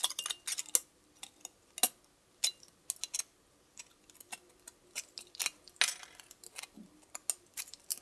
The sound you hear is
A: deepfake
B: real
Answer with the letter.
B